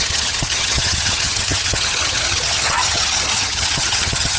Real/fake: fake